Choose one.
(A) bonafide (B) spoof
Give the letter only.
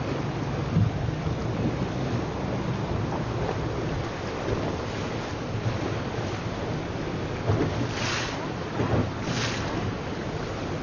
A